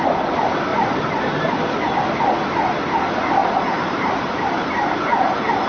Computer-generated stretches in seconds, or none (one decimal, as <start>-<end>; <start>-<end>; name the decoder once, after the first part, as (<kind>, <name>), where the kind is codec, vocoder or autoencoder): 0.7-1.6 (vocoder, BigVGAN v2); 3.4-5.0